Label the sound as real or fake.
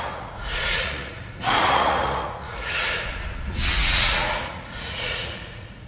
fake